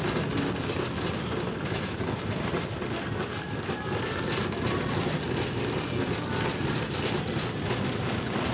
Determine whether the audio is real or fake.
real